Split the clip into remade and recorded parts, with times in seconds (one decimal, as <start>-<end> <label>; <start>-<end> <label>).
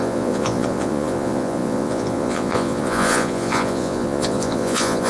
0.0-5.1 remade